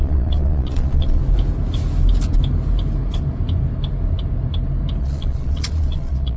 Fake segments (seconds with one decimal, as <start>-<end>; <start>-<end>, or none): 0.0-1.2; 5.0-6.4